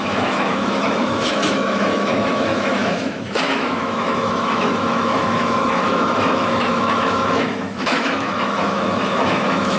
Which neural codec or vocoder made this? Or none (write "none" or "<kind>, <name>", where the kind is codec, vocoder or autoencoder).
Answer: autoencoder, DAC-VAE